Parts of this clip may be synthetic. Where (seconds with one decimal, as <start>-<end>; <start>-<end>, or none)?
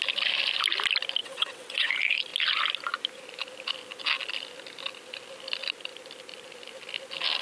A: 1.2-1.9